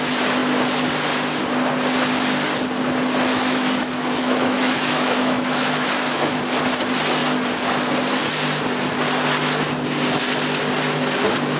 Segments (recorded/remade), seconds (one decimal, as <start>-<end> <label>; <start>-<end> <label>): 0.0-3.3 recorded; 3.3-6.4 remade; 6.4-11.6 recorded